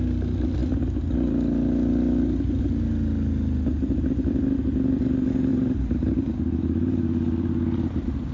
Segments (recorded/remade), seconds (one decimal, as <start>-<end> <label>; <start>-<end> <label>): 0.0-5.5 recorded; 5.5-6.6 remade; 6.6-8.3 recorded